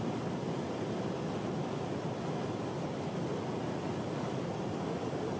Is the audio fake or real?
real